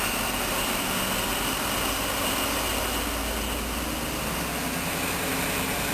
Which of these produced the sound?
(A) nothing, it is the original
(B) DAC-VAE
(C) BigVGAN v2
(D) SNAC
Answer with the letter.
A